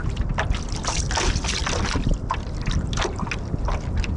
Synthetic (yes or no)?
no